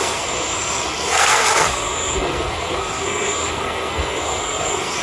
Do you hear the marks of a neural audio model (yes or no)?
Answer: yes